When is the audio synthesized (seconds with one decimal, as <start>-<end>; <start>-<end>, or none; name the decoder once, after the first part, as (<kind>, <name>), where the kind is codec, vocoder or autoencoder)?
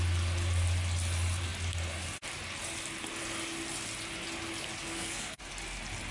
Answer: 4.8-5.4 (codec, SNAC)